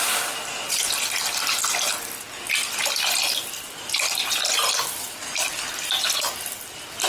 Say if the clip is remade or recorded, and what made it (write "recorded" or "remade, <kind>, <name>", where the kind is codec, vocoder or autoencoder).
recorded